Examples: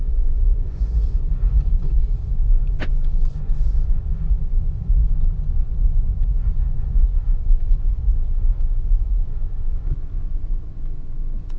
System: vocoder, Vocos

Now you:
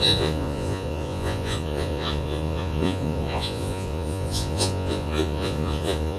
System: vocoder, Vocos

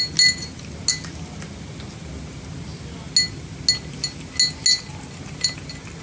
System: none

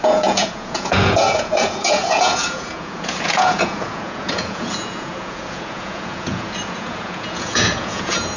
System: vocoder, Vocos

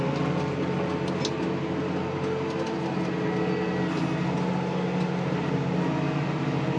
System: none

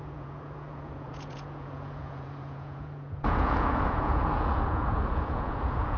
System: vocoder, Vocos